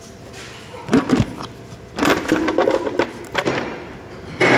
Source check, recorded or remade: recorded